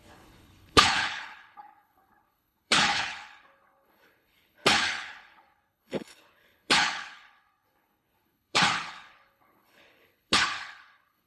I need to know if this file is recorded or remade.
remade